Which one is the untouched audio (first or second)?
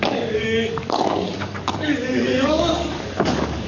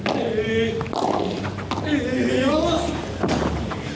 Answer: second